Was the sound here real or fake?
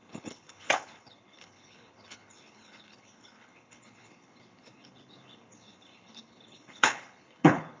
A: fake